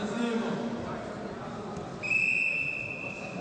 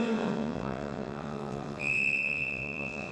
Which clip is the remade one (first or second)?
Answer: second